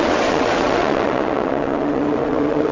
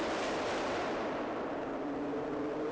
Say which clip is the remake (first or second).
first